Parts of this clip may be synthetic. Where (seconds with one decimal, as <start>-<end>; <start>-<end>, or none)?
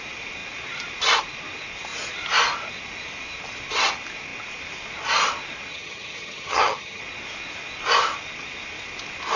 5.7-7.0